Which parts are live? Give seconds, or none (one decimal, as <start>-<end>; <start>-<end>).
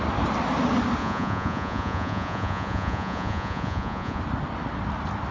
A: 0.0-1.0; 4.2-5.3